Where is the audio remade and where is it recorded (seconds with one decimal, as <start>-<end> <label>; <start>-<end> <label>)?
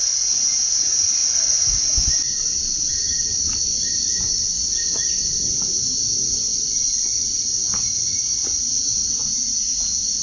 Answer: 0.0-10.2 recorded